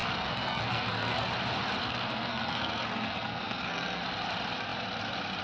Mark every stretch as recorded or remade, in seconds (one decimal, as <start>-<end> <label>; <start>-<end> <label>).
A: 0.0-1.3 remade; 1.3-1.8 recorded; 1.8-4.0 remade; 4.0-5.4 recorded